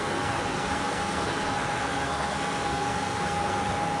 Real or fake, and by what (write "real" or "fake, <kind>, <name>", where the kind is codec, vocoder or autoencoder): fake, codec, SNAC